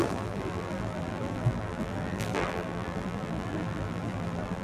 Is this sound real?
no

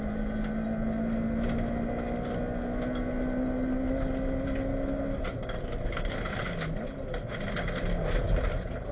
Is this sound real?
yes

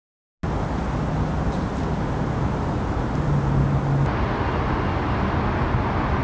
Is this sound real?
yes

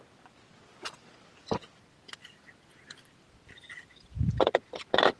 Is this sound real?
yes